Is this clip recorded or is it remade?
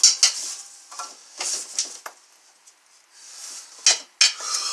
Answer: recorded